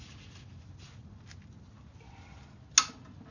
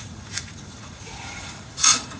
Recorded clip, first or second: first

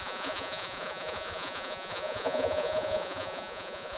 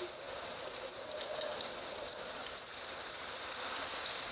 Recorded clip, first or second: second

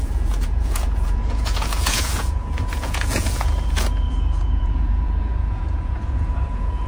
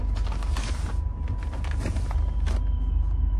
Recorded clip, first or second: second